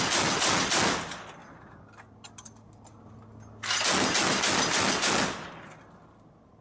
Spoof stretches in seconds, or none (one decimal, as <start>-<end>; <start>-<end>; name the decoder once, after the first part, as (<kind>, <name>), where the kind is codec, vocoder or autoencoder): none